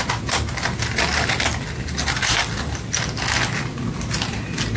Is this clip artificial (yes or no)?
no